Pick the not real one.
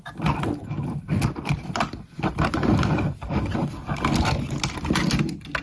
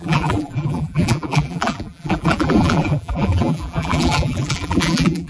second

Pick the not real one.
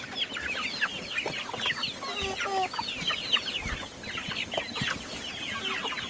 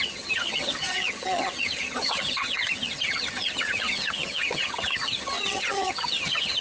second